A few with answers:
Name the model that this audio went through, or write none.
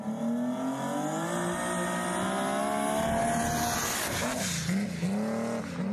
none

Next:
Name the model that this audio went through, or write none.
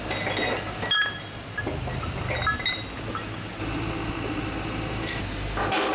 none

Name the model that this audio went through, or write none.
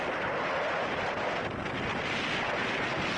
none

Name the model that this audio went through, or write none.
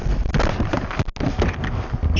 none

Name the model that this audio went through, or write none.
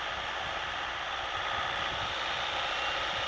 none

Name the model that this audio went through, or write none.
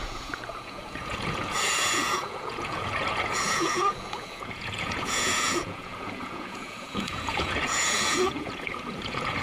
vocoder, Vocos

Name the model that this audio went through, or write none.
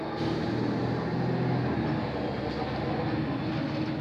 none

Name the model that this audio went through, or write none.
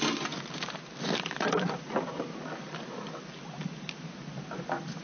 none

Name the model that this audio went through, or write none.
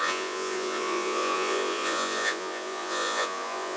vocoder, Vocos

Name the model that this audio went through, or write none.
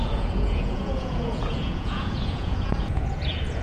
vocoder, Vocos